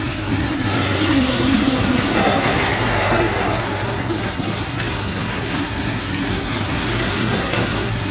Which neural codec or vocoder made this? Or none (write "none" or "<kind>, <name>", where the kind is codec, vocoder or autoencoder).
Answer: codec, SNAC